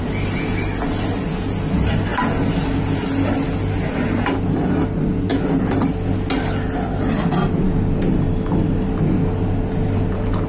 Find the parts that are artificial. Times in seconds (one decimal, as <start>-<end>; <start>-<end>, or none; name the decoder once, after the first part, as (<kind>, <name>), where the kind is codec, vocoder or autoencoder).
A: none